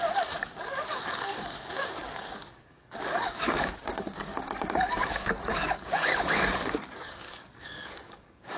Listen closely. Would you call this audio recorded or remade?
remade